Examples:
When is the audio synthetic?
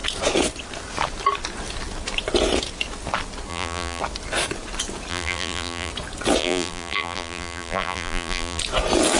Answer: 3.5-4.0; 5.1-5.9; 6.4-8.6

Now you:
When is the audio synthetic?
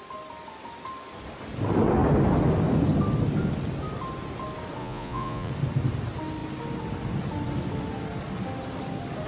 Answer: 4.8-5.5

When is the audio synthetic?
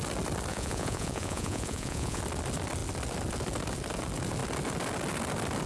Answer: 0.5-2.2